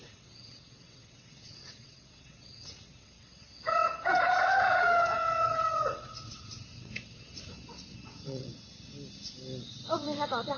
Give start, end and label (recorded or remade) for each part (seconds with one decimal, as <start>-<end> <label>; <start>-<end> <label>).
0.0-8.9 remade; 8.9-9.6 recorded; 9.6-10.6 remade